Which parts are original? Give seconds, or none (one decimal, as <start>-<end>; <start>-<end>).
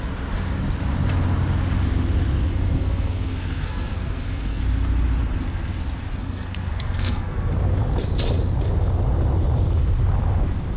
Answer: 0.0-2.5; 4.6-6.1; 7.5-10.8